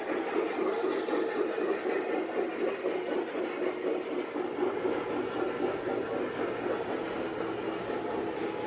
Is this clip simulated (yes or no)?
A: no